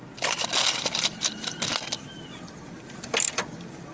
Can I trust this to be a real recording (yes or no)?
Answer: yes